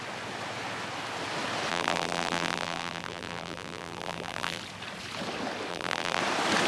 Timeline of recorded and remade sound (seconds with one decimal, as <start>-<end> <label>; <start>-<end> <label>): 0.0-1.7 recorded; 1.7-4.6 remade; 4.6-5.7 recorded; 5.7-6.2 remade; 6.2-6.7 recorded